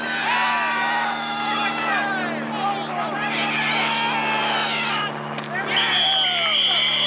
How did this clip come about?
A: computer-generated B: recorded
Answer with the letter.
B